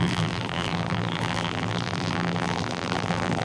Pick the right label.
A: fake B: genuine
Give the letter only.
A